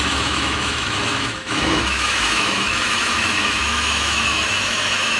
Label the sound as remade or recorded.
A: remade